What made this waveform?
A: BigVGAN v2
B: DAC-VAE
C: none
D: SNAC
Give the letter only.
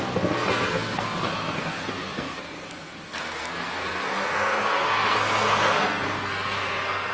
D